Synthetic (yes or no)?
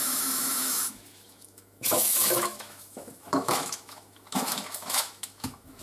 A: yes